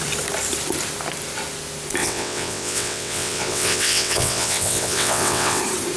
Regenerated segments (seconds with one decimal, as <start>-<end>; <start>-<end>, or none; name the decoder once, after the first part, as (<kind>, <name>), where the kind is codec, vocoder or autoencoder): 2.0-5.6 (vocoder, WaveNeXt)